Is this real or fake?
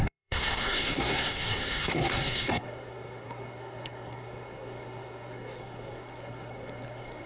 fake